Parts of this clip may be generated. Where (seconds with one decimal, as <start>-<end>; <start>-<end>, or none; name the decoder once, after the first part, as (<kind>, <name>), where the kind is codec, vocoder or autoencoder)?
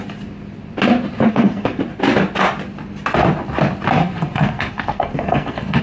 1.3-1.8 (codec, SNAC); 4.0-5.8